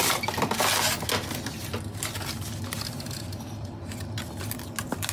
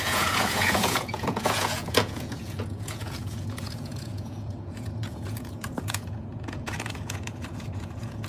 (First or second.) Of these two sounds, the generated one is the second